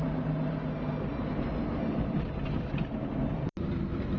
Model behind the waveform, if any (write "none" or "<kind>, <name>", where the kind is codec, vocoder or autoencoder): none